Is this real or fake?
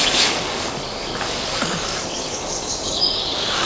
fake